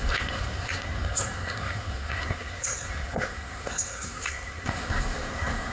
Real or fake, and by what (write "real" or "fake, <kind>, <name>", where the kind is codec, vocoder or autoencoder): fake, codec, SNAC